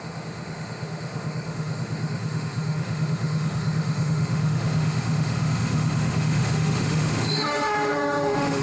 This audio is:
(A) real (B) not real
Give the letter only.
B